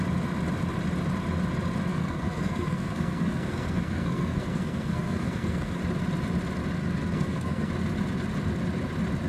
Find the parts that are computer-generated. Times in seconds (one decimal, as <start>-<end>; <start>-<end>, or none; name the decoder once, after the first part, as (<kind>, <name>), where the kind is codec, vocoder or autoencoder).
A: 1.9-5.8 (codec, SNAC); 6.8-7.7

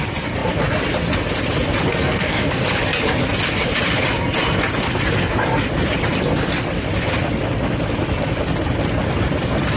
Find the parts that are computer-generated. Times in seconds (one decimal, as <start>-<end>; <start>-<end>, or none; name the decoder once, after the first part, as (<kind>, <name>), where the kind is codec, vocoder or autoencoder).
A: 1.9-2.6 (codec, SNAC)

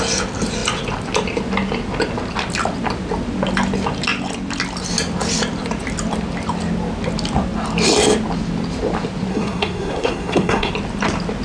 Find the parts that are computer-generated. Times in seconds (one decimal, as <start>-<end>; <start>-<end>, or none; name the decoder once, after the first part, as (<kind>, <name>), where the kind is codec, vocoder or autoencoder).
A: 9.3-10.7 (codec, SNAC)